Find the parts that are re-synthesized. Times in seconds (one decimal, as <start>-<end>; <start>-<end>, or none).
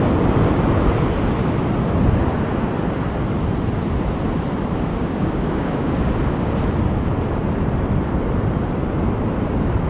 4.9-6.5